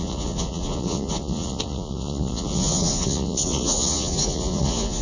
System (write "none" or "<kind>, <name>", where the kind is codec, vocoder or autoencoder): vocoder, Vocos